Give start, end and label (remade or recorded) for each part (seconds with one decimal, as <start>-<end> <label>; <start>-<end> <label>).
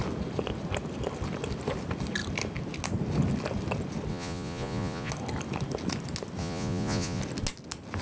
0.0-4.1 recorded; 4.1-5.1 remade; 5.1-6.4 recorded; 6.4-7.2 remade; 7.2-8.0 recorded